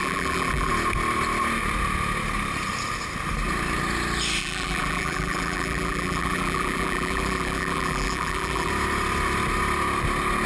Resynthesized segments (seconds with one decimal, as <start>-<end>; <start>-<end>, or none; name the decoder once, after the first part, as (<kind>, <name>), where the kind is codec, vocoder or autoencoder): 0.0-0.7 (vocoder, BigVGAN v2); 4.4-8.7